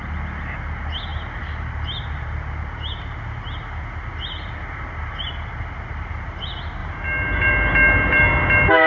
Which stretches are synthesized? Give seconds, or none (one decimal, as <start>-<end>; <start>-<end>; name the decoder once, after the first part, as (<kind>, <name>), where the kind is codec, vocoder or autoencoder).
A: 6.8-7.5 (vocoder, BigVGAN v2)